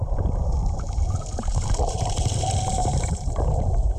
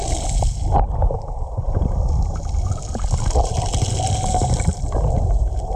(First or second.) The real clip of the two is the second